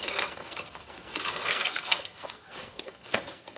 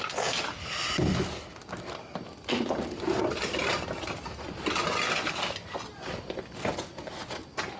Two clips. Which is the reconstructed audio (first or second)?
first